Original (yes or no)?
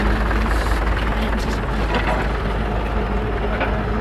yes